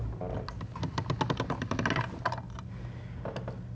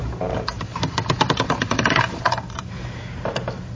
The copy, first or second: second